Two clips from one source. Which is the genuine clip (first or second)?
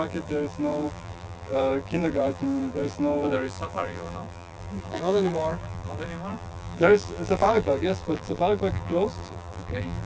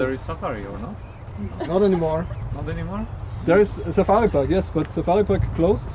second